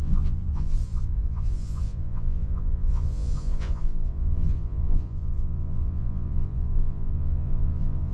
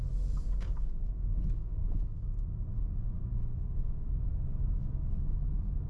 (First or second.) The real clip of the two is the second